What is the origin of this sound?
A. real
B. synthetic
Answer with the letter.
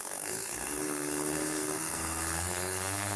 B